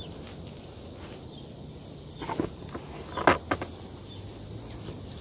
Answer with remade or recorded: recorded